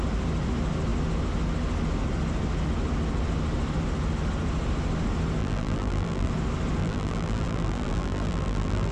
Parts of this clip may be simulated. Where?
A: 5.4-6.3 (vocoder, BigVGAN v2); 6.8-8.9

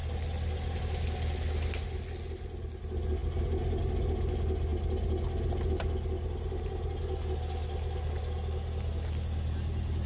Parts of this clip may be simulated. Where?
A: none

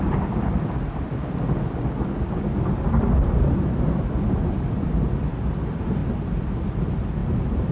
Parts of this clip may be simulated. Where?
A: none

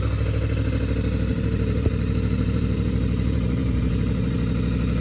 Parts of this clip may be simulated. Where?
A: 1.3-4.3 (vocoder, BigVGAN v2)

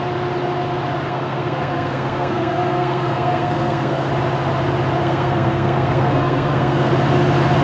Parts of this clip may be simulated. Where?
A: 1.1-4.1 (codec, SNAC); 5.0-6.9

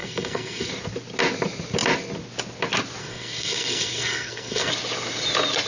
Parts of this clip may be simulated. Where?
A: 0.0-0.7 (codec, SNAC); 3.0-4.7

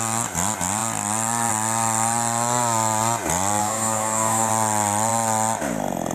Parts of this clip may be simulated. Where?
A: 3.6-4.5 (codec, DAC)

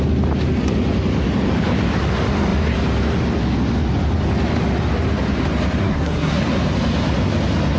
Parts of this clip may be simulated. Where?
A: 5.8-6.4 (codec, SNAC)